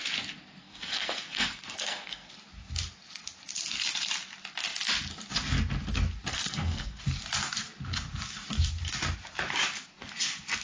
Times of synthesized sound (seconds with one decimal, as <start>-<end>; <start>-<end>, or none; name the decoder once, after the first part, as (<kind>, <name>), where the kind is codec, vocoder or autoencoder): 0.6-2.3 (codec, SNAC); 6.3-7.0